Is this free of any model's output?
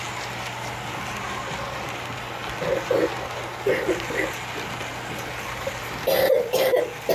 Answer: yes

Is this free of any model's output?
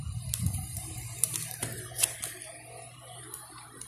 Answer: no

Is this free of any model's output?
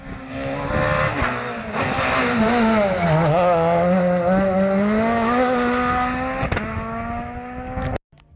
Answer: yes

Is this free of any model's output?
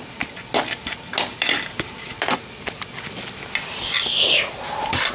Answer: yes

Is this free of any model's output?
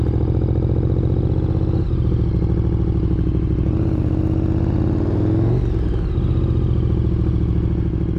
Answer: yes